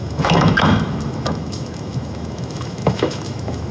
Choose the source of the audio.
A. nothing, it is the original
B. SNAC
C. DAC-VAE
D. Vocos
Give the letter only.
C